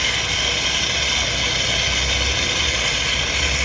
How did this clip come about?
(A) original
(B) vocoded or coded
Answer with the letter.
A